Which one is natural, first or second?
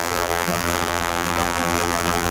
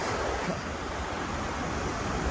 second